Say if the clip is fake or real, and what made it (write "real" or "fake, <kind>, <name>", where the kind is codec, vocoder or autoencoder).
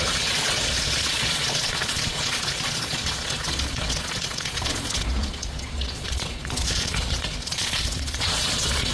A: fake, vocoder, Vocos